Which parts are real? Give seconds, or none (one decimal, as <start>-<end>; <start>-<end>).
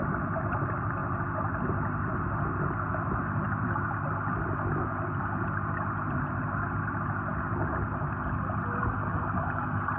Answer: 0.0-10.0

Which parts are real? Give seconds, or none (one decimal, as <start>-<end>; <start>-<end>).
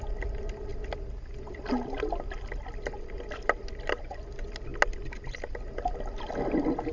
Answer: 0.0-6.9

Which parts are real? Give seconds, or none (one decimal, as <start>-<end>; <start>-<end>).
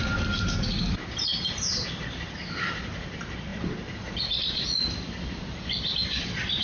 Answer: 0.0-6.6